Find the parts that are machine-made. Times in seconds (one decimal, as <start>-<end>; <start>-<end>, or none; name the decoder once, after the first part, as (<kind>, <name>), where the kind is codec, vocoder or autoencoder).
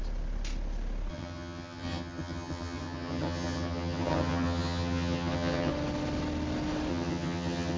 1.1-5.7 (vocoder, HiFi-GAN); 6.9-7.8